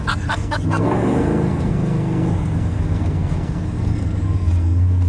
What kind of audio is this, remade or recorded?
remade